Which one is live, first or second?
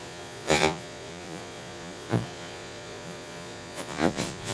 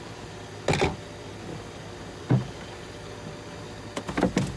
second